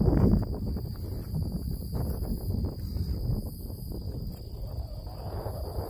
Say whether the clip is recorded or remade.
recorded